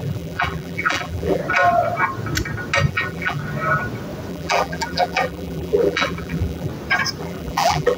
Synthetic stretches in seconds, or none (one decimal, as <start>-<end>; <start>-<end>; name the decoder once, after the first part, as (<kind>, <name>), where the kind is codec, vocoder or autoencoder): 0.0-1.4 (vocoder, BigVGAN v2); 2.9-3.4; 4.3-6.7; 7.2-8.0